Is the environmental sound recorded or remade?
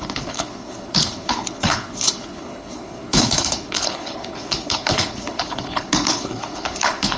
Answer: remade